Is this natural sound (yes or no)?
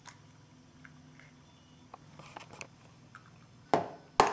yes